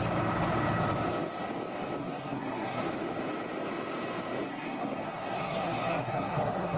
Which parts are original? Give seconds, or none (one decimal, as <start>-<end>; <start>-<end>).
0.0-2.0; 2.8-4.5